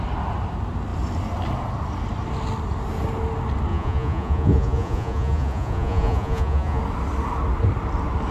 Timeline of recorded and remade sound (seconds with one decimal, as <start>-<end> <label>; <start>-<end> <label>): 0.0-3.7 recorded; 3.7-6.8 remade; 6.8-8.3 recorded